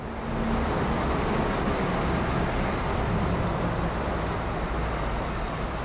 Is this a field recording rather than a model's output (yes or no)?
yes